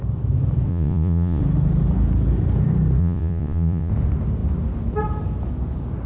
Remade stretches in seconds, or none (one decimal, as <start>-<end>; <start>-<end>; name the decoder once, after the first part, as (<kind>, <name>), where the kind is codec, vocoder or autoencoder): 0.7-1.4 (vocoder, Vocos); 3.0-3.9